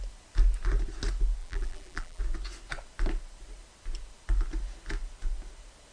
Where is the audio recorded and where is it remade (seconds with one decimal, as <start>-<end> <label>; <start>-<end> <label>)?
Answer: 0.0-1.4 recorded; 1.4-2.2 remade; 2.2-5.9 recorded